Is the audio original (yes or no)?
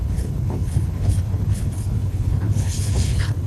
no